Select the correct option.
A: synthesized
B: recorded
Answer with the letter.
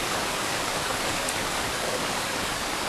A